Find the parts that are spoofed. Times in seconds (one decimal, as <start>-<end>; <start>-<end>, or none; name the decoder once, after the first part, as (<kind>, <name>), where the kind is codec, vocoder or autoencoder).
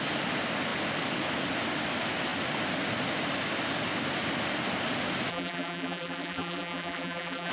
5.3-7.5 (vocoder, BigVGAN v2)